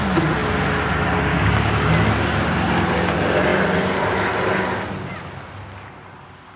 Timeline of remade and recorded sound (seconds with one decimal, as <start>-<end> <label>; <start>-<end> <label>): 0.0-1.3 recorded; 1.3-1.9 remade; 1.9-6.6 recorded